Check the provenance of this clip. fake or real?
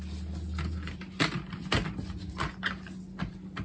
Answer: real